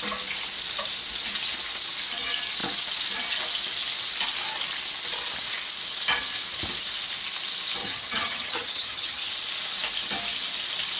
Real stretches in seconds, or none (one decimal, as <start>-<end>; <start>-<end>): 0.0-7.8; 9.3-11.0